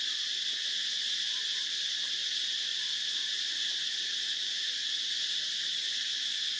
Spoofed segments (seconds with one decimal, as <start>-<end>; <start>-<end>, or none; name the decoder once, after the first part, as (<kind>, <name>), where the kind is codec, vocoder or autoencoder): none